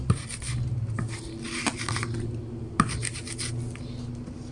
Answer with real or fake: real